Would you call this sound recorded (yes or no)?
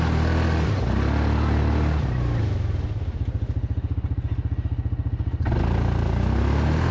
yes